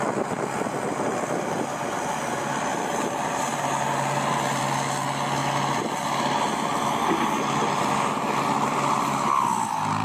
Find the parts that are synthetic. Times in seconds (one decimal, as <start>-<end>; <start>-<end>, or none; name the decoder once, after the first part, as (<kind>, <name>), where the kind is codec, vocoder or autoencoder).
none